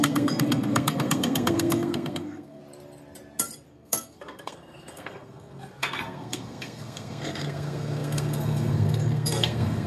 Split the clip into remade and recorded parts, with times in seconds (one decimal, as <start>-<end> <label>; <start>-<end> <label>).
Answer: 0.0-2.6 remade; 2.6-3.7 recorded; 3.7-9.9 remade